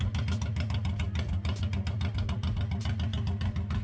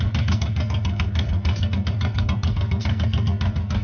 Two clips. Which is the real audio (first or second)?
first